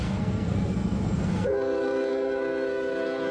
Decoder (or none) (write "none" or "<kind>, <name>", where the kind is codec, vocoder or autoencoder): codec, SNAC